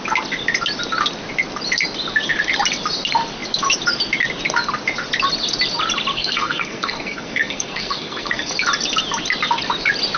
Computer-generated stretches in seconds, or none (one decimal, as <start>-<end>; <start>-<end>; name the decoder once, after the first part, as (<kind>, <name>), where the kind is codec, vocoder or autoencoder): 6.1-8.5 (codec, SNAC)